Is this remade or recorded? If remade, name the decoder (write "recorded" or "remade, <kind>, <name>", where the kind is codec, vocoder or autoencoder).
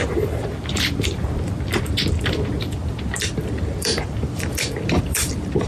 remade, vocoder, BigVGAN v2